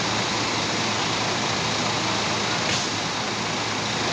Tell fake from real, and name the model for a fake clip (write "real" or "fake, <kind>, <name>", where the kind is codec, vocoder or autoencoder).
real